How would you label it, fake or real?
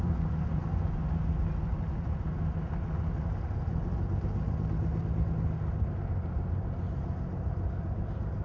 real